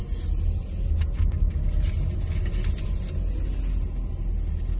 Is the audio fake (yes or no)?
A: no